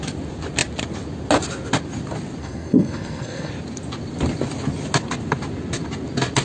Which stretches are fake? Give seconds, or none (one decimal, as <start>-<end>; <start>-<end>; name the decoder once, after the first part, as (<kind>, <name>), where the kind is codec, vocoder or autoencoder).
2.4-3.5 (codec, SNAC)